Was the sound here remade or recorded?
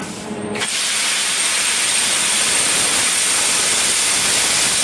remade